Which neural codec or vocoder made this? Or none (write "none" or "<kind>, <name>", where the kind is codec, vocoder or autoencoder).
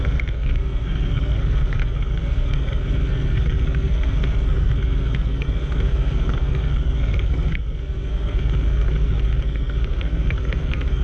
codec, SNAC